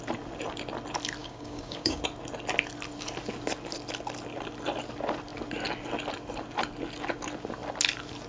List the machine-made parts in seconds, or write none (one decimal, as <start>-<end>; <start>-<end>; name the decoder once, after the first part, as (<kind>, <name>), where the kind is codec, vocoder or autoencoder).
1.2-2.0 (codec, DAC)